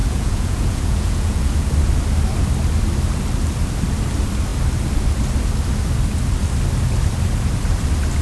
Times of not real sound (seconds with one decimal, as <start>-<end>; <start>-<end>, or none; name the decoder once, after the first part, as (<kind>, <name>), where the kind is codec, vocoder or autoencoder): 0.0-1.7 (vocoder, Vocos)

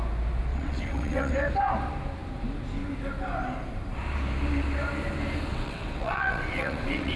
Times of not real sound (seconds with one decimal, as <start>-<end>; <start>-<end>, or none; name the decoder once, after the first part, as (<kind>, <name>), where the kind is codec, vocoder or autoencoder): 0.5-1.3 (vocoder, WaveNeXt); 5.5-7.2